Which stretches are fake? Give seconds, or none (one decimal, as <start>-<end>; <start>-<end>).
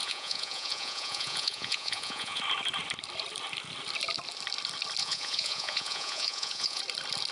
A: 0.0-2.4; 5.0-6.8